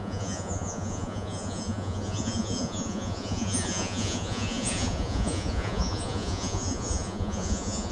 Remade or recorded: remade